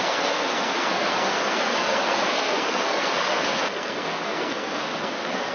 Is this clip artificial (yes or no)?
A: yes